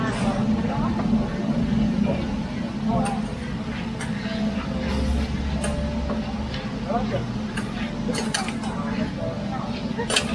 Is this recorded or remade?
recorded